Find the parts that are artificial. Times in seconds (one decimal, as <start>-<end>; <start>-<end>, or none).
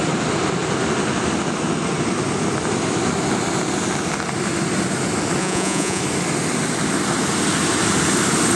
5.4-6.0